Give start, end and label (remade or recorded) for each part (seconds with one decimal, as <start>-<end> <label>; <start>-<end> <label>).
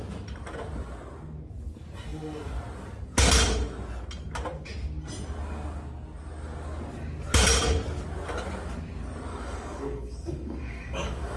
0.0-9.3 recorded; 9.3-11.4 remade